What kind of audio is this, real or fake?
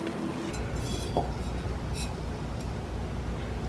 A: real